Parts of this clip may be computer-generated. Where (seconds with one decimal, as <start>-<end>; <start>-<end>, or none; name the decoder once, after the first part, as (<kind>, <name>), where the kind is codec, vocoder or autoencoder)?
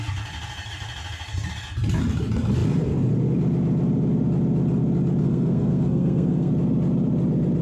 5.2-6.5 (codec, SNAC)